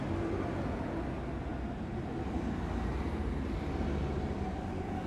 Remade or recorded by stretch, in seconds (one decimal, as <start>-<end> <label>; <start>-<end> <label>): 0.0-5.1 recorded